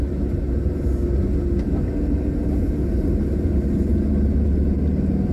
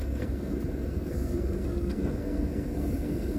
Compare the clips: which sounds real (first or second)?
first